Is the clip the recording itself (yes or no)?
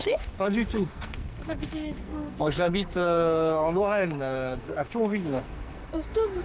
no